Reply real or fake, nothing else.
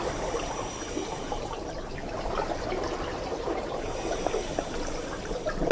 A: real